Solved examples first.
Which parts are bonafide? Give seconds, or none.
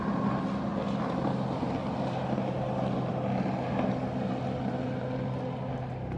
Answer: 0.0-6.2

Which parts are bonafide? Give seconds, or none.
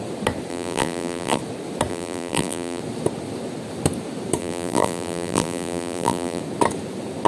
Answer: 0.0-0.5; 1.4-1.9; 2.8-4.4; 6.4-7.3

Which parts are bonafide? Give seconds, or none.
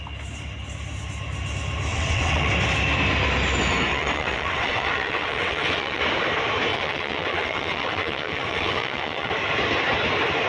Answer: 0.0-1.9; 2.5-3.9; 6.0-6.7; 9.3-10.5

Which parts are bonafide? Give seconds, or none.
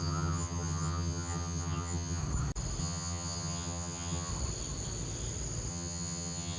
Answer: 2.2-2.8; 4.3-5.7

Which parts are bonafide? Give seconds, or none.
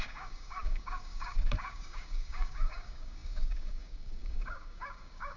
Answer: none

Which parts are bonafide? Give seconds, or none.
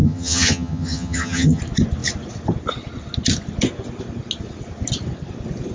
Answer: 1.6-5.7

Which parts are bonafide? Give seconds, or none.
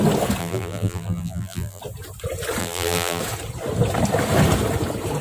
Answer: 0.0-0.4; 1.8-2.6; 3.2-5.2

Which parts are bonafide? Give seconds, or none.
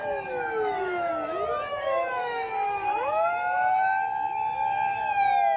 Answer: 1.1-1.7; 5.1-5.6